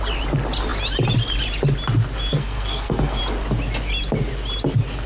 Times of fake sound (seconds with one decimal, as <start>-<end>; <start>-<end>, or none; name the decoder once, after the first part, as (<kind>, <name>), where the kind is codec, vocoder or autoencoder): 2.3-3.2 (codec, SNAC)